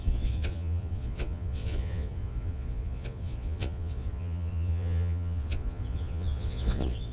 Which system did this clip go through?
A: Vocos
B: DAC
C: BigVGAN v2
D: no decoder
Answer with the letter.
A